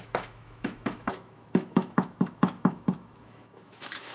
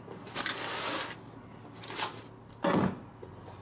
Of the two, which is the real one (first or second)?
second